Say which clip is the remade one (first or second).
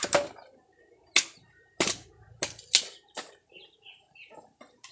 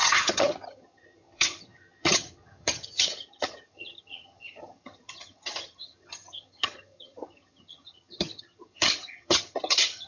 second